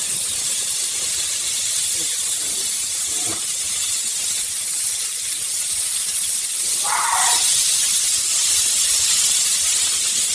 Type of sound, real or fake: real